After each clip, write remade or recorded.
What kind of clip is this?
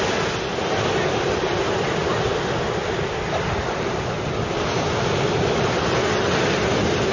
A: recorded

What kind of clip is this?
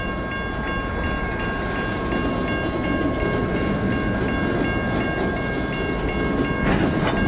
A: recorded